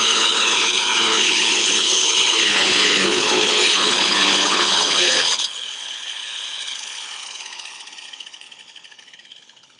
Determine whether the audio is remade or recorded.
remade